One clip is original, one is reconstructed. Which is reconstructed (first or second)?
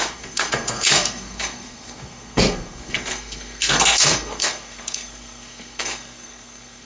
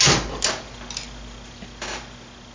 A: first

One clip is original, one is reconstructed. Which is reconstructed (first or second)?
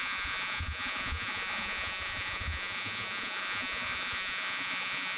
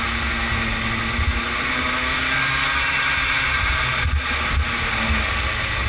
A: first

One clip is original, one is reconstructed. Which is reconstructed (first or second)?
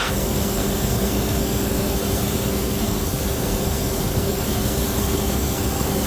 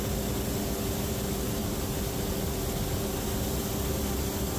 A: first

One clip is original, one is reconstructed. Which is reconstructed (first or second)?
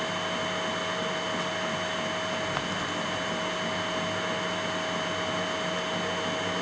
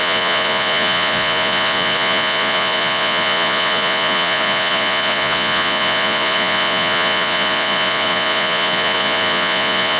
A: second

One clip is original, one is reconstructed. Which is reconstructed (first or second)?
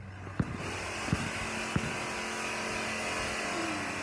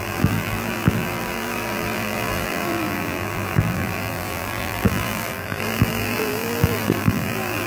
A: second